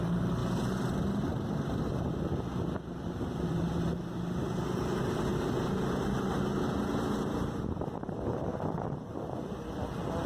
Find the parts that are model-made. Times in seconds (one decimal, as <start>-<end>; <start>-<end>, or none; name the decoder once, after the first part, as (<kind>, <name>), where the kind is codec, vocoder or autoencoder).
5.3-6.4 (vocoder, BigVGAN v2)